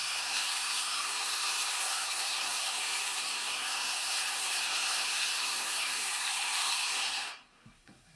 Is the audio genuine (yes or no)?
no